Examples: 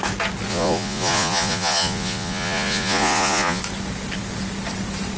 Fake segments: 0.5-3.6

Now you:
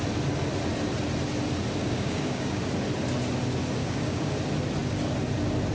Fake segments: 1.8-2.6; 3.8-4.3

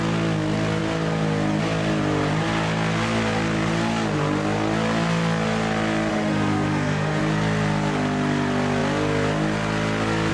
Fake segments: 6.1-7.2

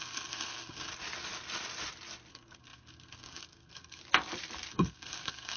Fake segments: 0.0-0.9; 2.3-4.0; 4.7-5.6

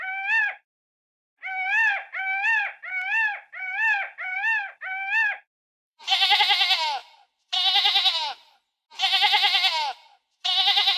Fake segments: 5.6-6.4

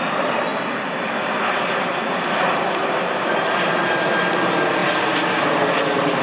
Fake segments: none

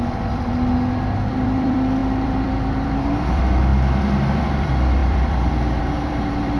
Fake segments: 0.0-0.5; 1.3-6.6

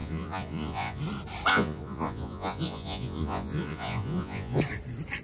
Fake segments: 0.0-1.0; 1.5-4.6